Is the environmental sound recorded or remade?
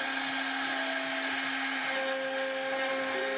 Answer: recorded